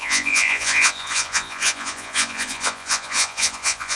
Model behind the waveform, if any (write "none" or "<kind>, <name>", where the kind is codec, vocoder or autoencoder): vocoder, Vocos